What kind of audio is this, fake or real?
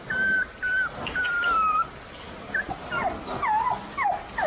real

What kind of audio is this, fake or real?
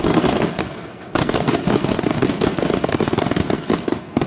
fake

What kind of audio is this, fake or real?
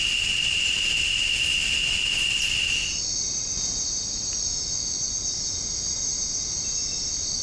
real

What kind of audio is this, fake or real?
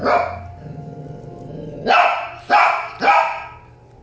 real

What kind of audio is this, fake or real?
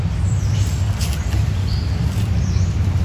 real